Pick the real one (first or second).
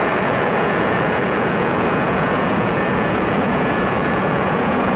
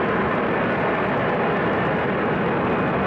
second